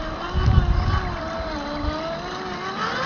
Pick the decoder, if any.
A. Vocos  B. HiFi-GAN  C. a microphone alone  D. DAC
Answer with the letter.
C